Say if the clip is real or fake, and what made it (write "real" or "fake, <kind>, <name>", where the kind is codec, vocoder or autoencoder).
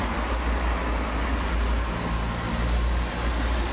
real